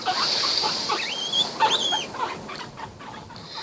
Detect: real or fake real